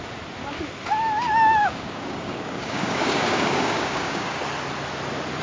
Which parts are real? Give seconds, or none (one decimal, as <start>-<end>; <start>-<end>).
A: 0.0-1.6; 4.4-5.4